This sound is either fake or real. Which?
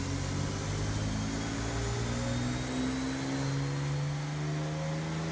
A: real